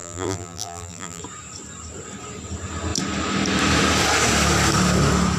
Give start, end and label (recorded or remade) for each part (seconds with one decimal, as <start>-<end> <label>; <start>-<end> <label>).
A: 0.0-1.2 remade; 1.2-5.4 recorded